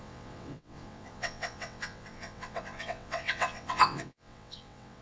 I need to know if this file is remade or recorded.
remade